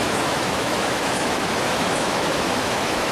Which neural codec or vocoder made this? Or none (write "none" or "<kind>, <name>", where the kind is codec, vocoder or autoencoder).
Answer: autoencoder, DAC-VAE